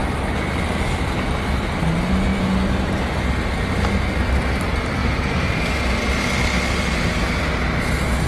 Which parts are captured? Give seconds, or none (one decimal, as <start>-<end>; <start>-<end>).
0.0-2.3; 3.3-5.0; 6.0-8.3